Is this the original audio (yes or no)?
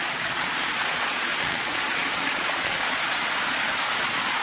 no